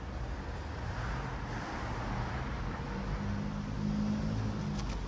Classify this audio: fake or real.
real